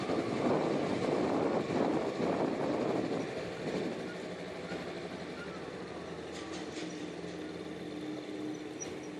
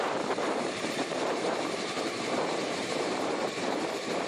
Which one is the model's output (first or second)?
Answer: second